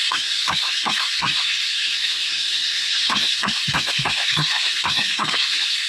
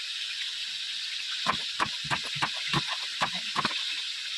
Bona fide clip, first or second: second